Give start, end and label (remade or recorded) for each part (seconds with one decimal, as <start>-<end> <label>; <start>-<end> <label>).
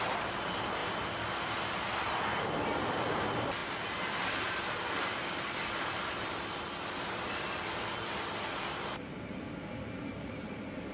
0.0-0.8 remade; 0.8-2.4 recorded; 2.4-10.9 remade